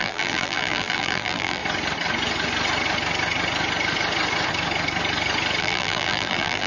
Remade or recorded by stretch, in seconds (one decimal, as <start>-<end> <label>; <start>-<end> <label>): 0.0-1.6 remade; 1.6-5.6 recorded; 5.6-6.7 remade